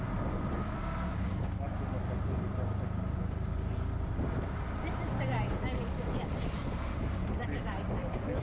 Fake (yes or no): no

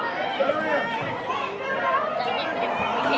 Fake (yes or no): no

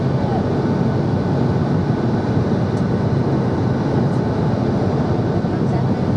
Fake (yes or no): no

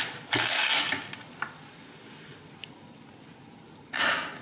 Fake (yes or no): no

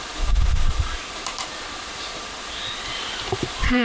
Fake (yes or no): yes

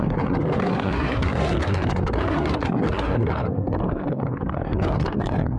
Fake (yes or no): yes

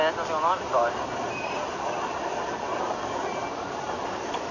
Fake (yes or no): no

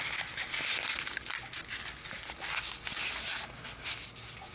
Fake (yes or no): no